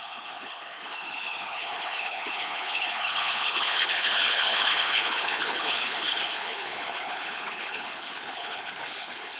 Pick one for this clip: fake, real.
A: fake